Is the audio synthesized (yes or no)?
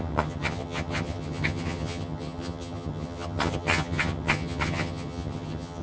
yes